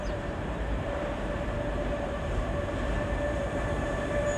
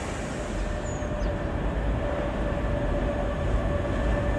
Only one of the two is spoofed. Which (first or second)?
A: first